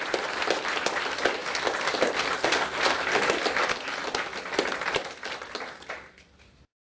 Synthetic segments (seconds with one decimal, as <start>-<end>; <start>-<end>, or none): none

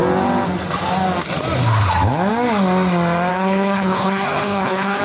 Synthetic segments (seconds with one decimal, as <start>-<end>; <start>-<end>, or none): 3.3-5.0